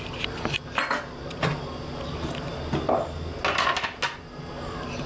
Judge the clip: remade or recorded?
recorded